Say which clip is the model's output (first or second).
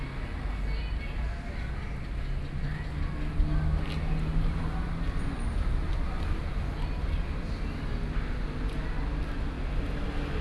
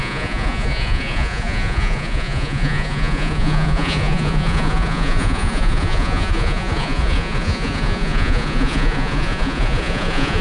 second